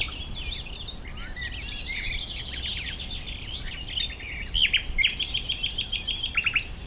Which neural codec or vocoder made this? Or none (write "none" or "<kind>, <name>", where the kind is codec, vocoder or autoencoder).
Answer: none